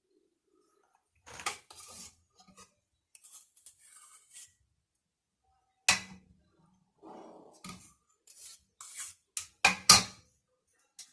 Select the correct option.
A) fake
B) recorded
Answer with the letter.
B